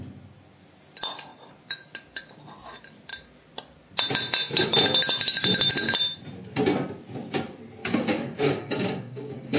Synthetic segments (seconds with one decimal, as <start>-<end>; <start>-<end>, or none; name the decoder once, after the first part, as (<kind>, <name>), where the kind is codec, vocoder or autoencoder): 7.8-9.6 (codec, DAC)